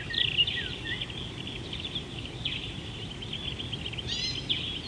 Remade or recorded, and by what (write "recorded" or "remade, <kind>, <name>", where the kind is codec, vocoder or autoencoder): recorded